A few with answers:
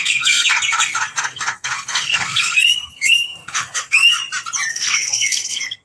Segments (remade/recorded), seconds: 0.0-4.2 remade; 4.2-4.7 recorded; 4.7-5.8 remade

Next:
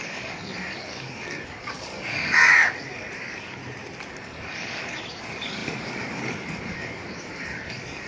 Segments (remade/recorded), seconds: 0.0-3.6 remade; 3.6-4.1 recorded; 4.1-8.1 remade

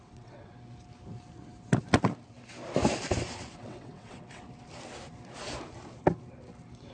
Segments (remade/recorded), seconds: 0.0-0.5 remade; 0.5-3.6 recorded; 3.6-4.4 remade; 4.4-6.9 recorded